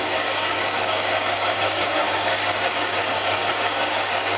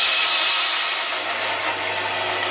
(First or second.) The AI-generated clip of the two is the first